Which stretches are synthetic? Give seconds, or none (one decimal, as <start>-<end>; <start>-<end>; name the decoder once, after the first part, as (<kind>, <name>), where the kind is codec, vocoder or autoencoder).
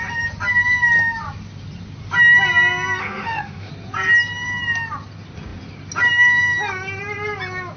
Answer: 3.0-3.7 (autoencoder, DAC-VAE)